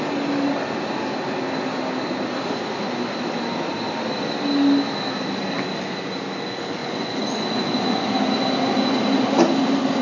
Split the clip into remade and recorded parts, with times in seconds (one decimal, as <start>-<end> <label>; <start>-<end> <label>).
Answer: 0.0-6.8 recorded; 6.8-8.0 remade; 8.0-10.0 recorded